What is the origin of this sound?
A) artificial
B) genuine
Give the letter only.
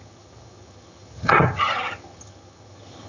A